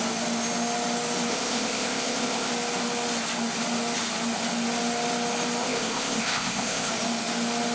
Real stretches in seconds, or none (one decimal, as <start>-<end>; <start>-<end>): 0.0-1.3; 2.5-5.6; 6.9-7.7